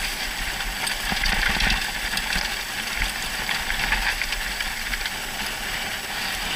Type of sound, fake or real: real